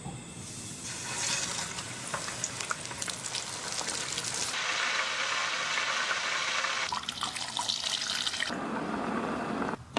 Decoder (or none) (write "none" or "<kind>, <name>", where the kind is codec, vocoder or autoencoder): none